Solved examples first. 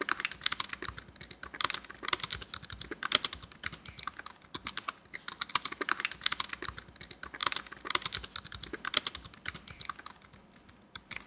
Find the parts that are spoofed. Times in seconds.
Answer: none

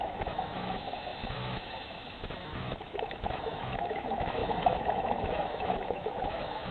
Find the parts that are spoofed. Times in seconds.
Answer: 0.0-6.7 (autoencoder, DAC-VAE)

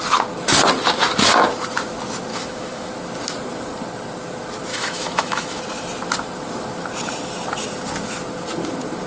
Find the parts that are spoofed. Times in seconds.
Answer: 2.3-2.9 (autoencoder, DAC-VAE); 4.7-5.6

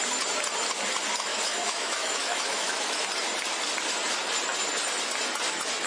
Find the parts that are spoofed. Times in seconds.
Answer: 1.3-3.0 (autoencoder, DAC-VAE)

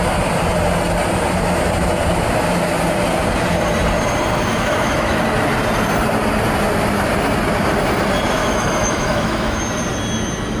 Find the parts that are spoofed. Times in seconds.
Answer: 4.5-5.2 (autoencoder, DAC-VAE); 8.4-9.6